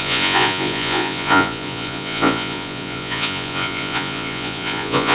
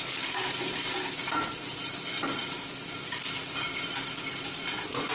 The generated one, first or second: first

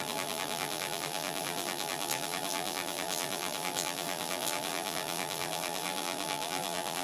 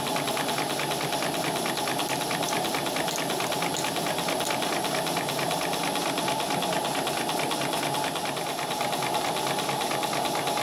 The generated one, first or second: first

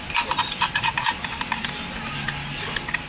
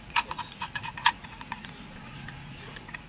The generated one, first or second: second